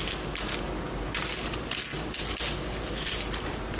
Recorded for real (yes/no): yes